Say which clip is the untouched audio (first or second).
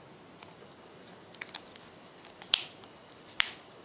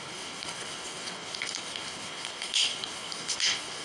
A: first